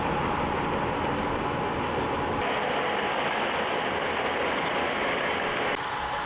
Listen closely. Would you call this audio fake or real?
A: real